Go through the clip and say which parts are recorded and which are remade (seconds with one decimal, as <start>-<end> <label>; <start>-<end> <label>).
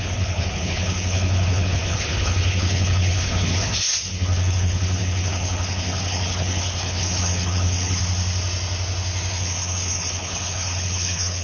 0.0-8.0 remade; 8.0-9.3 recorded; 9.3-11.4 remade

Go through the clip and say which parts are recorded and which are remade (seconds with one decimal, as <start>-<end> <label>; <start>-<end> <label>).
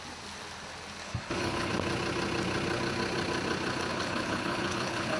0.0-1.0 recorded; 1.0-1.7 remade; 1.7-3.9 recorded; 3.9-5.2 remade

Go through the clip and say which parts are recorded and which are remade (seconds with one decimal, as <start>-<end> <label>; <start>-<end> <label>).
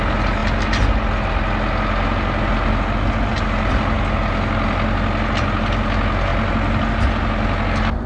0.0-8.1 recorded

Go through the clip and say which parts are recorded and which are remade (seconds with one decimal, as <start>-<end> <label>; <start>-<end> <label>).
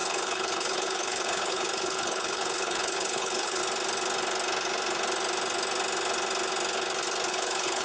0.0-3.6 remade; 3.6-7.3 recorded; 7.3-7.8 remade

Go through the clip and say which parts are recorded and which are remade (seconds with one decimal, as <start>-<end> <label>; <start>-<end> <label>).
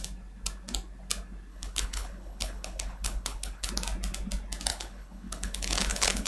0.0-1.5 recorded; 1.5-3.7 remade; 3.7-4.7 recorded; 4.7-6.3 remade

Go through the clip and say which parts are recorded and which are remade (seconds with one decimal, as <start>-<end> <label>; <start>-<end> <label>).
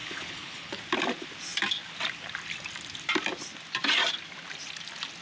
0.0-0.8 remade; 0.8-5.2 recorded